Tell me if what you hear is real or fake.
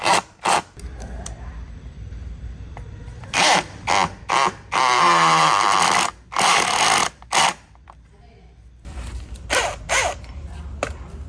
real